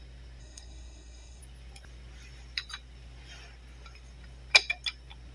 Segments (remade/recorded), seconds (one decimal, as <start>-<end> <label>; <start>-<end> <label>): 0.0-0.4 recorded; 0.4-1.4 remade; 1.4-5.3 recorded